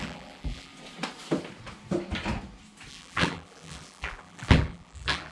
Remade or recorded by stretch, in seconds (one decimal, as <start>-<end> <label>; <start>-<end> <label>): 0.0-0.7 remade; 0.7-2.9 recorded; 2.9-5.3 remade